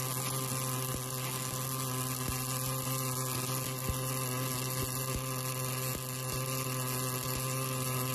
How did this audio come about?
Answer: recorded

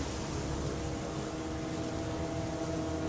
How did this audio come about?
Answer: recorded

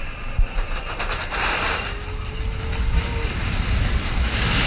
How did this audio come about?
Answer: recorded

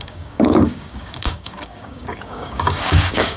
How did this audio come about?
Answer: remade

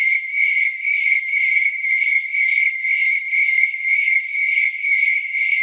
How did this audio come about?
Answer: remade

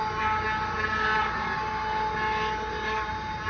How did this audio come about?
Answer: recorded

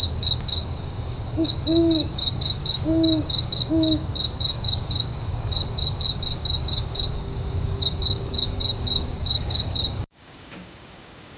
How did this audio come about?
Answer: remade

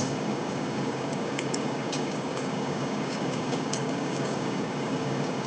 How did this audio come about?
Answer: remade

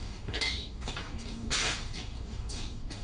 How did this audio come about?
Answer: remade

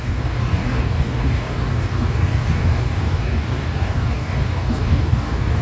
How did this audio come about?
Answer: remade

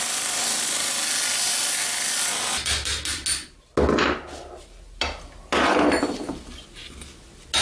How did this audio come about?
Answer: recorded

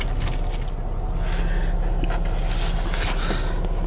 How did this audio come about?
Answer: recorded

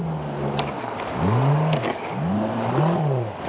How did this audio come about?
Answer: remade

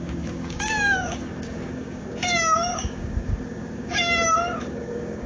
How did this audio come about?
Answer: remade